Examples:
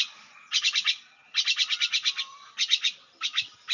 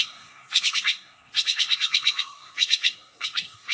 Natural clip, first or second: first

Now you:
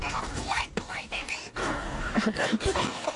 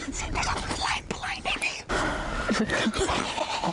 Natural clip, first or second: second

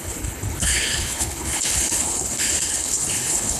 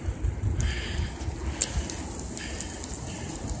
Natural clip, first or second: second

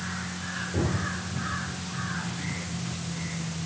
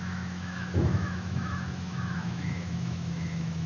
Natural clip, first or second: first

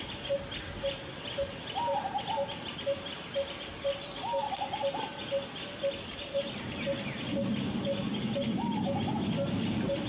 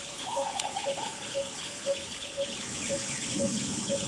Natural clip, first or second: first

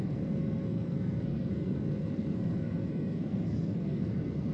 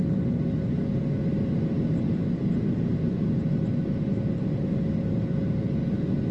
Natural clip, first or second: second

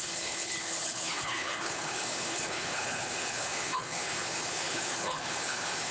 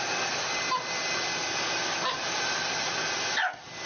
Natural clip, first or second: second